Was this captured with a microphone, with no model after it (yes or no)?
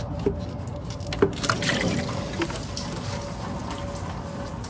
yes